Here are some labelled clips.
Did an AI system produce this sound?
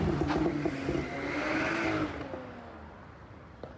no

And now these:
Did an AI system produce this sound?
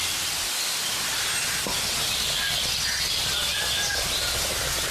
no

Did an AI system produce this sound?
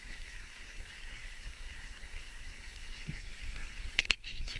yes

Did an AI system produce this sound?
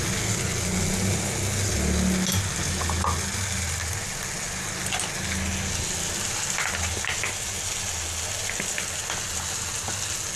no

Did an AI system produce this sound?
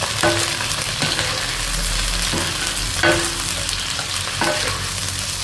no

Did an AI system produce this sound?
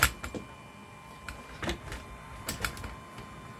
no